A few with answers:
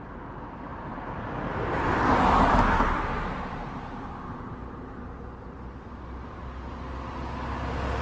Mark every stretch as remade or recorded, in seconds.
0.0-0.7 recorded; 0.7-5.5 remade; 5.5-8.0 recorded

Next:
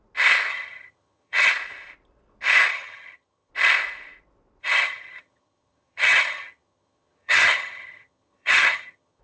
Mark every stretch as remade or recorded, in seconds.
0.0-0.5 recorded; 0.5-1.5 remade; 1.5-2.7 recorded; 2.7-3.5 remade; 3.5-4.6 recorded; 4.6-9.2 remade

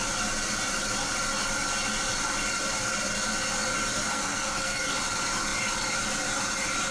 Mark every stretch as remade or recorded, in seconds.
0.0-4.1 recorded; 4.1-5.0 remade; 5.0-6.9 recorded

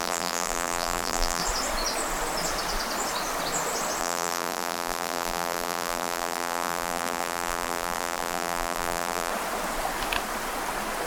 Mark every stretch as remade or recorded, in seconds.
0.0-1.4 remade; 1.4-4.0 recorded; 4.0-9.3 remade; 9.3-11.1 recorded

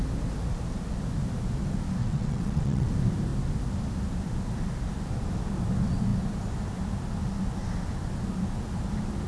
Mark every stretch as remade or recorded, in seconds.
0.0-2.0 recorded; 2.0-2.9 remade; 2.9-9.3 recorded